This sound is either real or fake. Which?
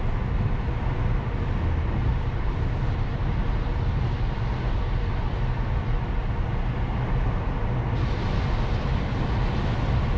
real